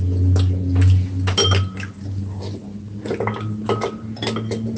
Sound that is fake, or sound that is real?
real